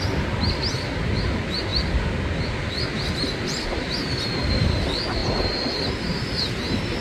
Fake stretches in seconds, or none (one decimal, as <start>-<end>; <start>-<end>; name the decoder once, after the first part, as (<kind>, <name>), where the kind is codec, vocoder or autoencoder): 3.7-4.6 (vocoder, BigVGAN v2); 5.2-7.0